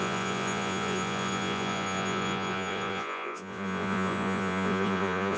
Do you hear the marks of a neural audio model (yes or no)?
yes